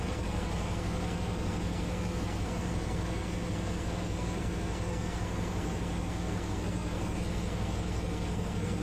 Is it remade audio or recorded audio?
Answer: remade